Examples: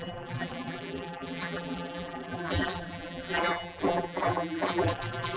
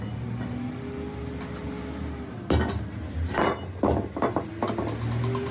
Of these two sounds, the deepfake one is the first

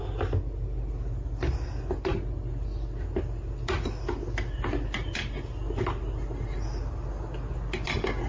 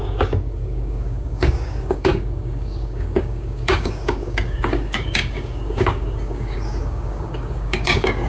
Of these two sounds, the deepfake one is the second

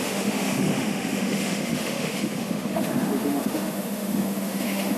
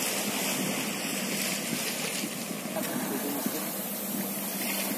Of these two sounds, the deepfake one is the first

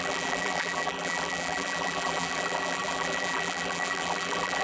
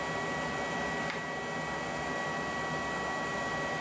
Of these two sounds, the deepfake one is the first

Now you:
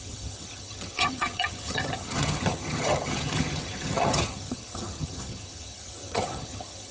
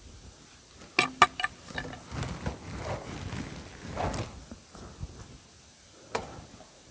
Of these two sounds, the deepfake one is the first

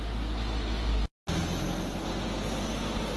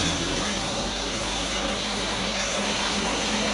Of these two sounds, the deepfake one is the second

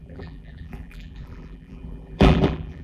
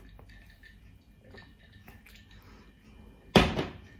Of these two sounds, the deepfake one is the first